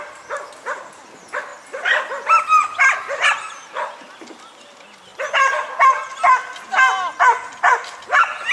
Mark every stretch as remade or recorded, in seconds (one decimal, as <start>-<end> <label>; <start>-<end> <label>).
0.0-8.5 recorded